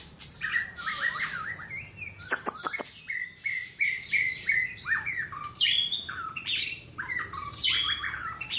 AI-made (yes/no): yes